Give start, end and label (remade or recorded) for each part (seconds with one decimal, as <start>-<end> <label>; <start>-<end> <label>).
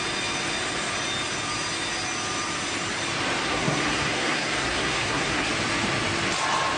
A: 0.0-3.4 recorded; 3.4-5.5 remade; 5.5-6.8 recorded